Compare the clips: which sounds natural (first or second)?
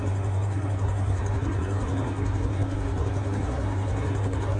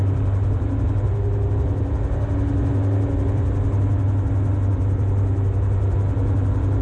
second